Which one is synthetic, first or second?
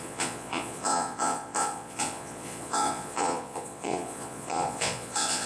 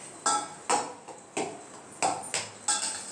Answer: first